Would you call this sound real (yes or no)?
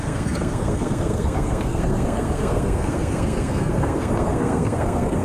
no